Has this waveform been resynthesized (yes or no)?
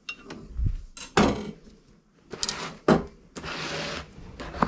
no